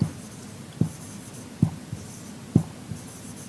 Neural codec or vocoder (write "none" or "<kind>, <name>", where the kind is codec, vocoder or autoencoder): none